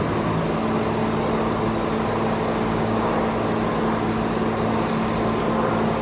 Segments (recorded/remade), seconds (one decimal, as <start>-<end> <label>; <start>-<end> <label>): 0.0-2.5 recorded; 2.5-3.1 remade; 3.1-6.0 recorded